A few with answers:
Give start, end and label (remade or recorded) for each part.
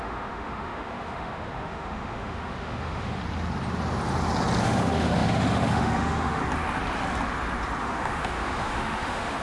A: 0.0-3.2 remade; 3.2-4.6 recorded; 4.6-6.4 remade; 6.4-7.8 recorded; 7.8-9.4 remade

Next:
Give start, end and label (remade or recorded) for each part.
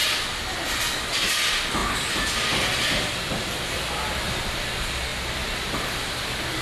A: 0.0-1.8 recorded; 1.8-4.5 remade; 4.5-6.6 recorded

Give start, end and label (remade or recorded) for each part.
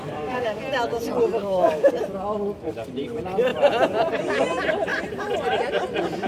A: 0.0-0.6 remade; 0.6-1.4 recorded; 1.4-1.9 remade; 1.9-6.3 recorded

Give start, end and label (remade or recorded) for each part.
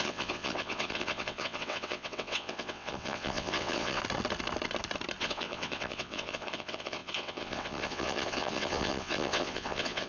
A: 0.0-4.0 remade; 4.0-5.2 recorded; 5.2-10.1 remade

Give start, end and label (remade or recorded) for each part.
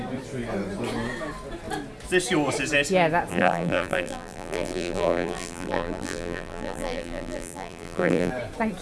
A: 0.0-3.3 recorded; 3.3-8.3 remade; 8.3-8.8 recorded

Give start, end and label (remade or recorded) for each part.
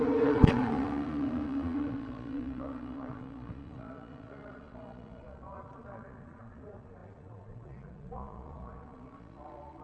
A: 0.0-9.8 remade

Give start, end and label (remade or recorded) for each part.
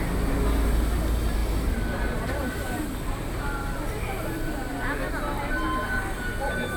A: 0.0-1.4 recorded; 1.4-2.8 remade; 2.8-6.8 recorded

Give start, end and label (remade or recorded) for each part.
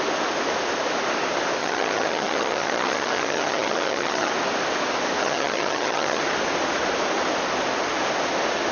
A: 0.0-1.6 recorded; 1.6-4.3 remade; 4.3-5.2 recorded; 5.2-6.2 remade; 6.2-8.7 recorded